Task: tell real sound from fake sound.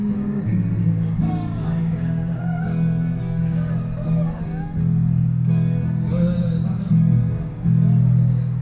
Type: fake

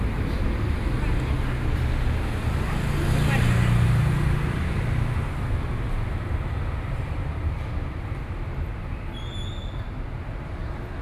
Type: real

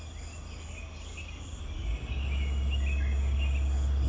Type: real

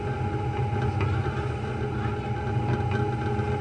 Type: real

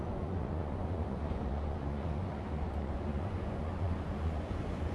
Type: fake